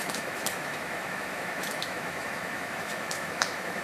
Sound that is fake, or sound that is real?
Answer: fake